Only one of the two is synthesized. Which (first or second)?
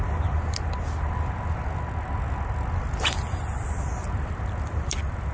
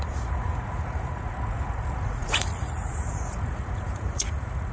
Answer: second